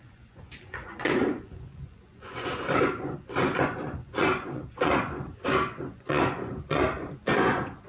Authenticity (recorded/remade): remade